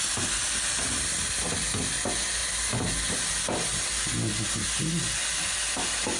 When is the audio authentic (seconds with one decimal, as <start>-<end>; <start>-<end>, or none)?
0.0-6.2